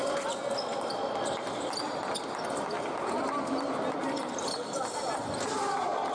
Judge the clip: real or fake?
real